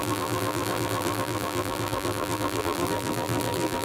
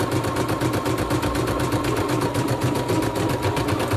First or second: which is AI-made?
first